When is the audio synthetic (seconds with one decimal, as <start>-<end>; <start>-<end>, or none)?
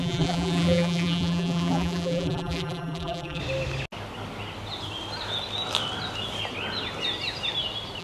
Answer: 0.0-3.4